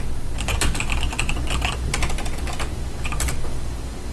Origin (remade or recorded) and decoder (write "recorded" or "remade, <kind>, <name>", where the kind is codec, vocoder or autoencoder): recorded